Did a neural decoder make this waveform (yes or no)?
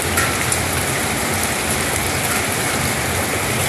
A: yes